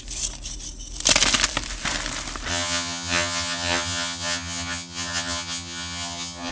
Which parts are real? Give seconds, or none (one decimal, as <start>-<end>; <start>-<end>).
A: 0.0-2.5